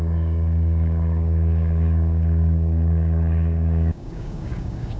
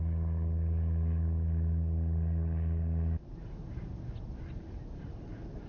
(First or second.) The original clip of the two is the second